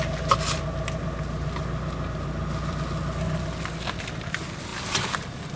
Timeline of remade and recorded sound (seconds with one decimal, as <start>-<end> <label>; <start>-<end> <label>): 0.0-5.6 recorded